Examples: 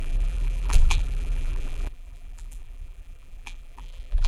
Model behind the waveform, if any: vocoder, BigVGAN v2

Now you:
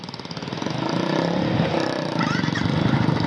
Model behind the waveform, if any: vocoder, BigVGAN v2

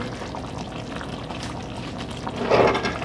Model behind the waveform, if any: none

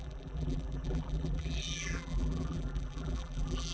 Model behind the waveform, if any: vocoder, BigVGAN v2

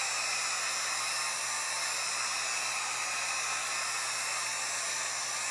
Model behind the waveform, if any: none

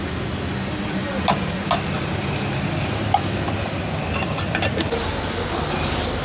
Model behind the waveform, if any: none